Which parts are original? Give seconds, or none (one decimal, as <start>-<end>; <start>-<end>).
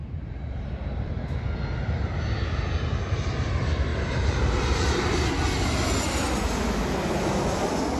1.1-3.9; 5.3-8.0